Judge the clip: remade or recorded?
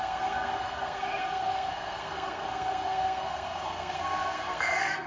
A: remade